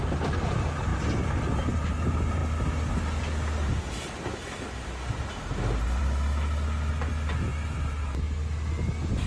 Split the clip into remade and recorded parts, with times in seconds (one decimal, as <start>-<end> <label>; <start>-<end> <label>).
0.0-9.3 recorded